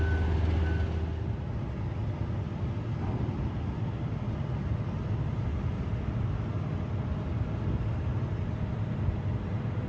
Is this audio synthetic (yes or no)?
no